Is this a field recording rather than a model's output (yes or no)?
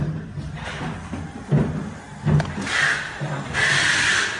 yes